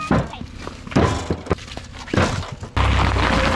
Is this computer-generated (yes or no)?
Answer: no